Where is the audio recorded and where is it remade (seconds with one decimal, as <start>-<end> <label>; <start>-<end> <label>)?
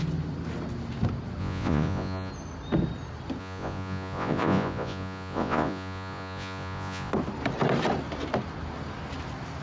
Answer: 0.0-1.4 recorded; 1.4-2.3 remade; 2.3-3.4 recorded; 3.4-7.1 remade; 7.1-9.6 recorded